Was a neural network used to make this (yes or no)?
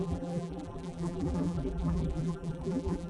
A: yes